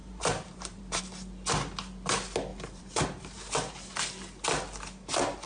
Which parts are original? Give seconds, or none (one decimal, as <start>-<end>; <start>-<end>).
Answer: 1.0-2.5; 3.8-5.5